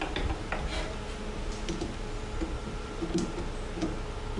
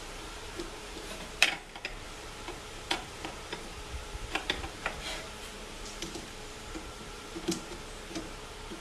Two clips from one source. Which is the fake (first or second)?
second